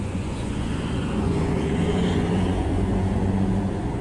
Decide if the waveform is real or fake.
fake